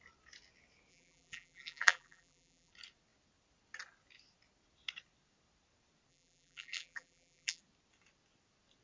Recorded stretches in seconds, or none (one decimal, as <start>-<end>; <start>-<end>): 0.0-0.9; 2.7-6.1; 7.6-8.8